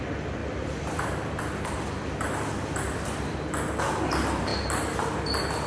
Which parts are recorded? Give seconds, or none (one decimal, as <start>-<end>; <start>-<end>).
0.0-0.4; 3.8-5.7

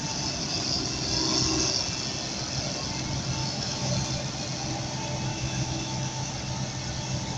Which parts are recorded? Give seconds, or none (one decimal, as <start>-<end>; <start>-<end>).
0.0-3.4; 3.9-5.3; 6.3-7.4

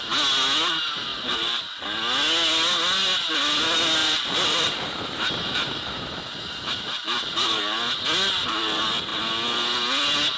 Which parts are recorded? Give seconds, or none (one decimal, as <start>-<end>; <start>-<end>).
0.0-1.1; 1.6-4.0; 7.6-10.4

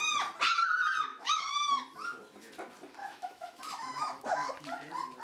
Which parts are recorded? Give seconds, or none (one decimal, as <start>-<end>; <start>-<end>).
0.0-1.1; 1.8-3.0; 4.5-5.2